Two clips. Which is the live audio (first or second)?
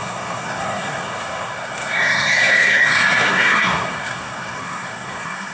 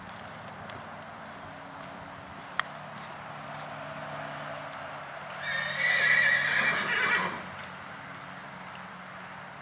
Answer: second